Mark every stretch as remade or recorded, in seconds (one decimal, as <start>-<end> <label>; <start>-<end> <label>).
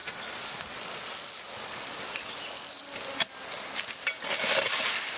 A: 0.0-5.2 recorded